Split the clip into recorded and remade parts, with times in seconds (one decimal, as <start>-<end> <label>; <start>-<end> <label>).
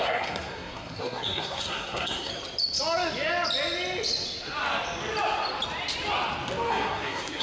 0.0-2.3 remade; 2.3-6.7 recorded; 6.7-7.4 remade